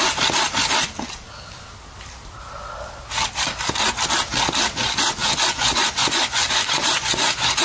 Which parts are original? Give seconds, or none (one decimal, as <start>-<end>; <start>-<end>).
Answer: 0.0-5.2